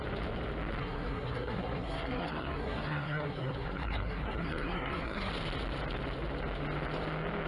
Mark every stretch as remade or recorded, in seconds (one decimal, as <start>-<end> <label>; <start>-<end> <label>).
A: 0.0-0.8 recorded; 0.8-5.3 remade; 5.3-7.5 recorded